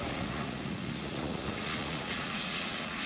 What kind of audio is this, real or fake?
fake